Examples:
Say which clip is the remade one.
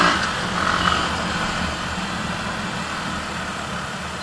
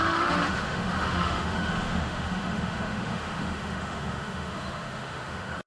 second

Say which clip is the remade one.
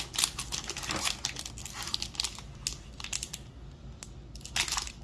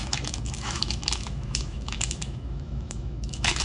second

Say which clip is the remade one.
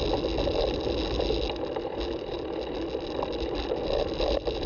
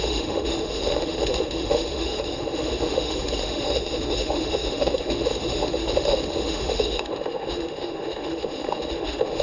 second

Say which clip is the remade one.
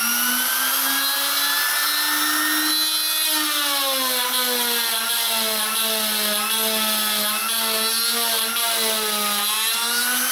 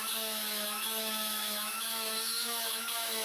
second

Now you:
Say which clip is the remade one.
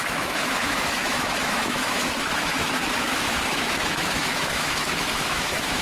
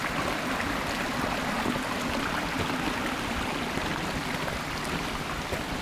first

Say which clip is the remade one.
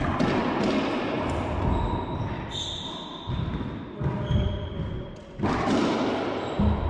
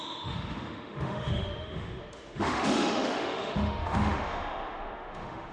second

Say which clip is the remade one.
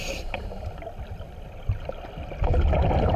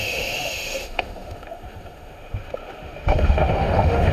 second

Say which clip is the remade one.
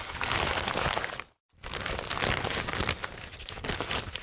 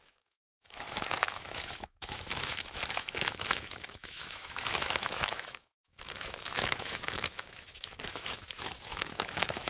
second